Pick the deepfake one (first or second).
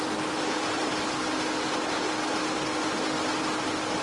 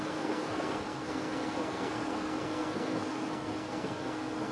second